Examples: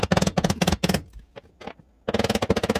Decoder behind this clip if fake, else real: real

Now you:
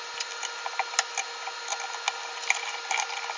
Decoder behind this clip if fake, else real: real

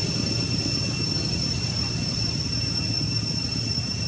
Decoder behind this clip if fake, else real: real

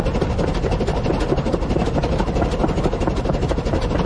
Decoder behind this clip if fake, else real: real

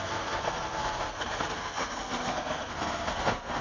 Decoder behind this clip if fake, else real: fake, codec, SNAC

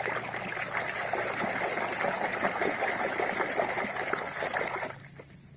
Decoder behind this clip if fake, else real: real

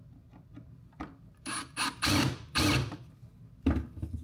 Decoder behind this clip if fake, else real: real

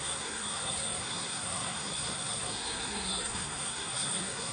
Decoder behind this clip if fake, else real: fake, codec, SNAC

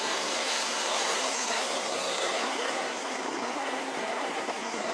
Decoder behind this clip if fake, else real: fake, codec, SNAC